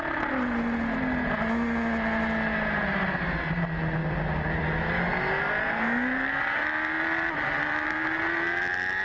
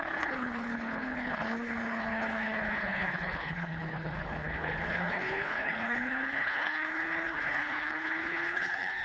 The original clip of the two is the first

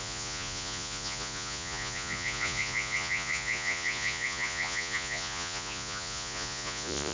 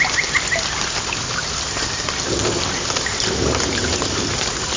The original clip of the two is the second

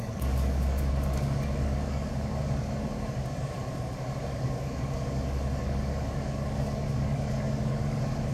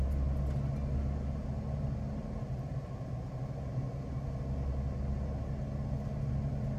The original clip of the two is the second